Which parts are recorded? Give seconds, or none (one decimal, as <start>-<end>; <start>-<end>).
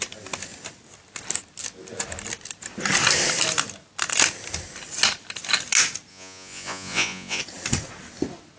0.0-6.1; 7.4-8.6